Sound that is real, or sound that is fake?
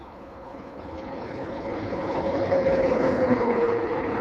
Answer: fake